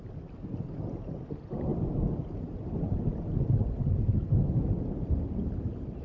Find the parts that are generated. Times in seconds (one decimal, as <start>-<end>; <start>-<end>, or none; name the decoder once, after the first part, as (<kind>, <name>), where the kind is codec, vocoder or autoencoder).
none